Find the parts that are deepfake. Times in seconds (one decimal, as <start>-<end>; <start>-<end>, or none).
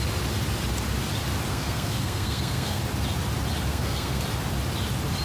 1.5-2.8; 3.7-4.2